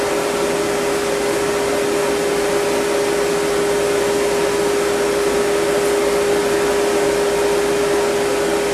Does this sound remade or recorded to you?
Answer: recorded